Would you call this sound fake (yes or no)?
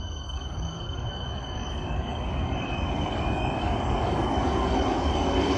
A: yes